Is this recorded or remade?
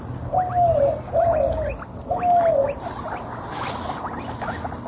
recorded